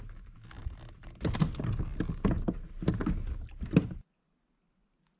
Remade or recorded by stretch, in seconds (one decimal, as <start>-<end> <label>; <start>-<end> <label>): 0.0-5.2 recorded